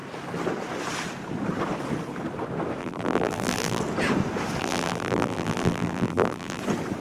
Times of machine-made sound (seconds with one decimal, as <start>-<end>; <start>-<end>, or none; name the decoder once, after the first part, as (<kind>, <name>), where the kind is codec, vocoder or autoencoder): 2.8-3.8 (vocoder, BigVGAN v2); 4.6-6.6